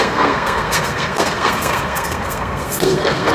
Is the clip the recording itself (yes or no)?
no